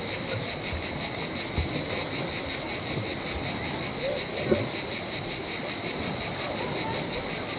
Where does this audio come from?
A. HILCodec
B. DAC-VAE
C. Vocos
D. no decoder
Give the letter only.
D